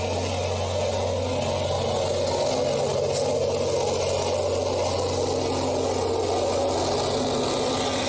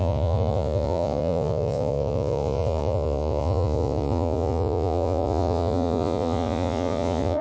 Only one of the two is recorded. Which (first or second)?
first